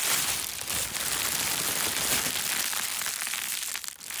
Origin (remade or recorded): recorded